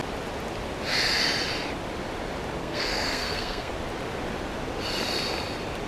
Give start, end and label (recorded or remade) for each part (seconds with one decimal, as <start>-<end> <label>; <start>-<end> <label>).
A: 0.0-2.6 recorded; 2.6-3.7 remade; 3.7-5.9 recorded